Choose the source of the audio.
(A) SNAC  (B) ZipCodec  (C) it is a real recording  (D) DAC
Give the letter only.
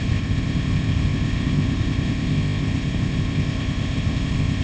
B